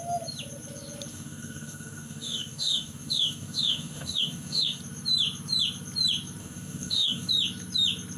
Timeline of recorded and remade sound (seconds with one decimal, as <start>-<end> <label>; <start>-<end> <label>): 0.0-1.1 recorded; 1.1-4.8 remade; 4.8-6.4 recorded; 6.4-7.3 remade; 7.3-8.2 recorded